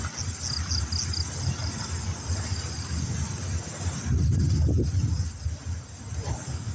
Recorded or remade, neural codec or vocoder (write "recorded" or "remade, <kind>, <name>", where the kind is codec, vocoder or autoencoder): recorded